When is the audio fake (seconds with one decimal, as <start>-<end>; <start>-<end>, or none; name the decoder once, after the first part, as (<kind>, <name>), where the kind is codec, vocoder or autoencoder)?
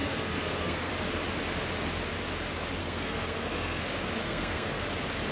0.0-0.9 (codec, SNAC); 2.8-3.8; 4.2-4.8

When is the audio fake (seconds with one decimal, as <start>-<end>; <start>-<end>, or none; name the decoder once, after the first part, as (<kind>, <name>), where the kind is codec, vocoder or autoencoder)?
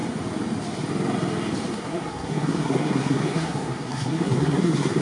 1.7-5.0 (codec, SNAC)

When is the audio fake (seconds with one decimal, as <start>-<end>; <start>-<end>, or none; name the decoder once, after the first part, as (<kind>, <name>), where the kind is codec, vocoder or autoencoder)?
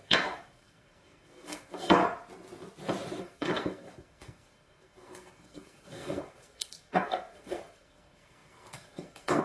0.0-2.0 (codec, SNAC); 3.2-9.4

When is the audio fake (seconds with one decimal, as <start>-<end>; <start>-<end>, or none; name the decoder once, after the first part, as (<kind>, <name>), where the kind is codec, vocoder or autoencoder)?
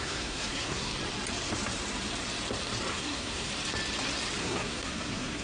0.0-0.9 (codec, SNAC); 2.9-3.5; 4.4-5.4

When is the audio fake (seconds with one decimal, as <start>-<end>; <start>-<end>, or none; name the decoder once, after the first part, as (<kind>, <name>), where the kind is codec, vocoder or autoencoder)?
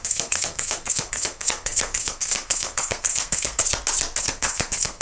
0.0-3.6 (codec, SNAC); 4.2-5.0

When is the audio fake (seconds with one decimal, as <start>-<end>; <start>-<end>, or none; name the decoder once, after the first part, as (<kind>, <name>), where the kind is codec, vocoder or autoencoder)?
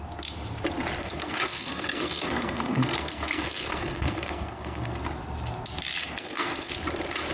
1.0-5.0 (codec, SNAC); 6.0-6.7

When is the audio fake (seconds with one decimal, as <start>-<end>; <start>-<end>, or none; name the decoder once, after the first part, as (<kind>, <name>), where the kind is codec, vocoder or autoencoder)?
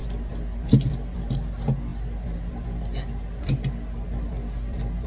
none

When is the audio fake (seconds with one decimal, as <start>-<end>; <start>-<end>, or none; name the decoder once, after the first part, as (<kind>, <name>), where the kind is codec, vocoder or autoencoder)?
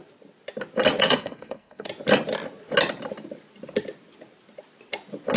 1.0-1.9 (codec, SNAC)